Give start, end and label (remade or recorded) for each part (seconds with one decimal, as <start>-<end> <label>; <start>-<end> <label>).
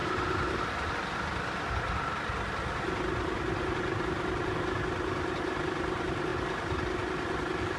0.0-7.8 recorded